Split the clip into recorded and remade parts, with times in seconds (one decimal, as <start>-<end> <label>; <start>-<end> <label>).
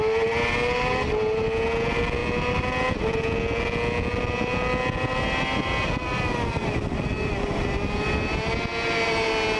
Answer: 0.0-9.6 recorded